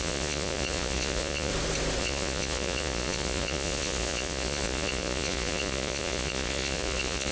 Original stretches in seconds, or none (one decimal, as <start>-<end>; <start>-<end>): 1.5-2.0

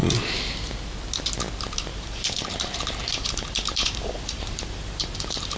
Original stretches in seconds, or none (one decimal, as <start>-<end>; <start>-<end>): 0.0-1.9

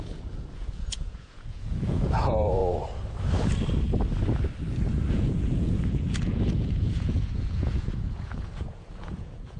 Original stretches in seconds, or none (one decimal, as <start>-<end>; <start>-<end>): 2.6-5.1